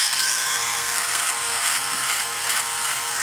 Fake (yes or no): yes